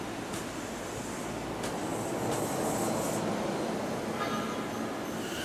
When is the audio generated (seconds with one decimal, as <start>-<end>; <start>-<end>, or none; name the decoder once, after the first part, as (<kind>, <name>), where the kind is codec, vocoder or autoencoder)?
none